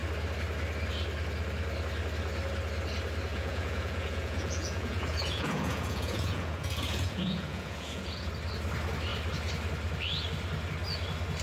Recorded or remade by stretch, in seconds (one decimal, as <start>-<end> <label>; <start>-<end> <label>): 0.0-3.3 recorded; 3.3-8.3 remade; 8.3-11.4 recorded